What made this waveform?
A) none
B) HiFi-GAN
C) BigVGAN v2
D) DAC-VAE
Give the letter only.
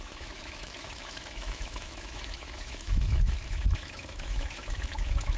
D